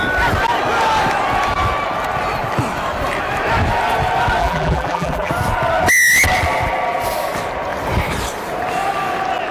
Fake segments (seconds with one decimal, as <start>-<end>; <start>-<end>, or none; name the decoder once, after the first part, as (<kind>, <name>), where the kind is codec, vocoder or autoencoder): 4.4-5.3 (vocoder, BigVGAN v2)